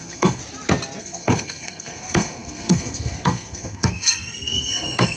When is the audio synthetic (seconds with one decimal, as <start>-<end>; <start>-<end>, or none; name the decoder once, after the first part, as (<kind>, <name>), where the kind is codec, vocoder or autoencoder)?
0.0-0.4 (codec, SNAC); 1.0-5.2